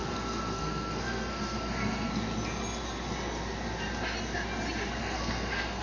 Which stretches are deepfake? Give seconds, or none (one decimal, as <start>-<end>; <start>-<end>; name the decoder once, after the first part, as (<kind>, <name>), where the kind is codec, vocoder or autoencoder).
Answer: 0.0-2.1 (codec, SNAC); 5.0-5.8